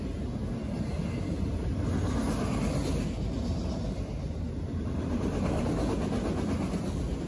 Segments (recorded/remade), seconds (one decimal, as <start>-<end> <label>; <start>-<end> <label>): 0.0-7.3 recorded

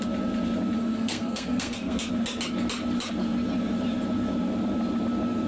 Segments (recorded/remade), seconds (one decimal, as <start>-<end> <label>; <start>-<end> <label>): 0.0-0.8 recorded; 0.8-2.1 remade; 2.1-5.5 recorded

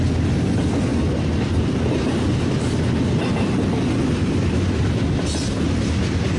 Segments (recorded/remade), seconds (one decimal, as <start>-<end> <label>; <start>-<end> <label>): 0.0-6.4 recorded

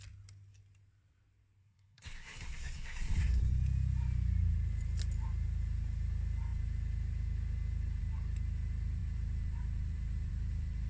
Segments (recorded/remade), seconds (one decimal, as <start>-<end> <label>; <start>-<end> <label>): 0.0-1.6 recorded; 1.6-3.4 remade; 3.4-10.9 recorded

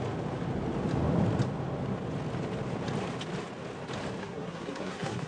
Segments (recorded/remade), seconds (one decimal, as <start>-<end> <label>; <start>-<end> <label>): 0.0-4.2 recorded; 4.2-5.3 remade